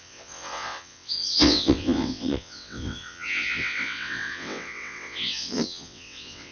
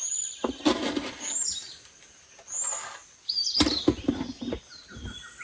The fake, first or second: first